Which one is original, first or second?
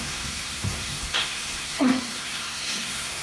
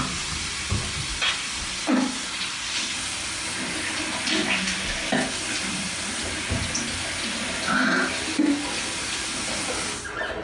second